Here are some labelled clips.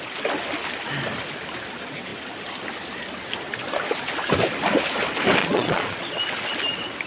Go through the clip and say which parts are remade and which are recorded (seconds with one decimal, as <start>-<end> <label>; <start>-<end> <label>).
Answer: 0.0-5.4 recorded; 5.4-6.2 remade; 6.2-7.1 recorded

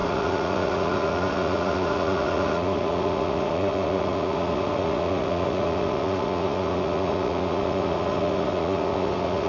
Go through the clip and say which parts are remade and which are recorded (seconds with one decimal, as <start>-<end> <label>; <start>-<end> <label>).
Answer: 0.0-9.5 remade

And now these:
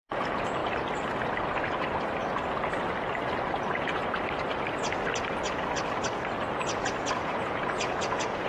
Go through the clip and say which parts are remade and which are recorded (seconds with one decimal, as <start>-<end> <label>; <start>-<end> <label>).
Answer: 0.0-0.6 remade; 0.6-3.6 recorded; 3.6-4.0 remade; 4.0-7.2 recorded; 7.2-8.5 remade